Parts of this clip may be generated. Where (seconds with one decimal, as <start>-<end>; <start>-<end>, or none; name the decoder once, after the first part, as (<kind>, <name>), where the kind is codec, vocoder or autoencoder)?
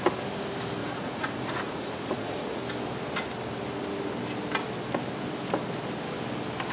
0.8-2.6 (vocoder, Vocos)